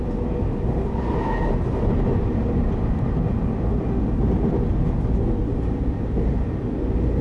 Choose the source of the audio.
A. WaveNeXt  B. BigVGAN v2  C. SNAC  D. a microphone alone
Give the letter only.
D